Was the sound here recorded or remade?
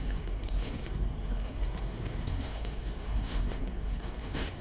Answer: remade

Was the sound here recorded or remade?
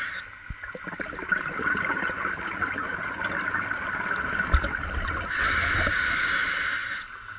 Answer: recorded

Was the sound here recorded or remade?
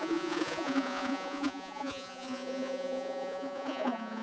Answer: remade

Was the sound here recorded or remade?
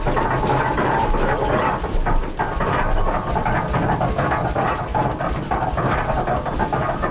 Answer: recorded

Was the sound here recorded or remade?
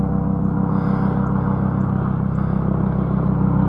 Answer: recorded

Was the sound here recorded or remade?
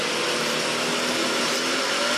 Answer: recorded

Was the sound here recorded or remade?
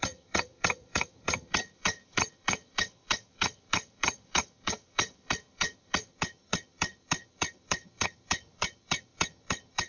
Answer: remade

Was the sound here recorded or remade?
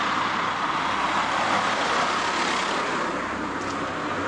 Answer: recorded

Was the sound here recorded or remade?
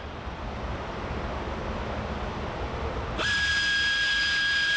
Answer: remade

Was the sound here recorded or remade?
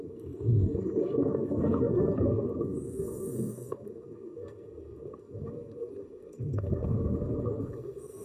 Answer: remade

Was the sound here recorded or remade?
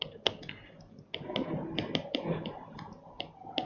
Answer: recorded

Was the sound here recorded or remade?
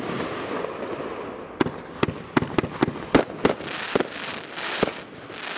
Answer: recorded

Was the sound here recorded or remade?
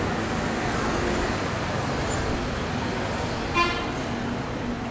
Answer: recorded